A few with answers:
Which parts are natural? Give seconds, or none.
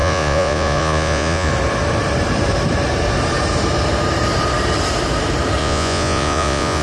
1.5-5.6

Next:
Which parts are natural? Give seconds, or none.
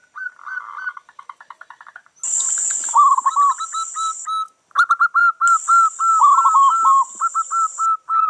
0.0-8.3